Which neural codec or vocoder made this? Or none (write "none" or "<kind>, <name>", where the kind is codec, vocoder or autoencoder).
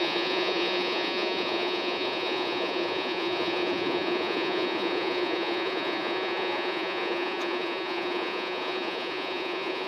vocoder, Vocos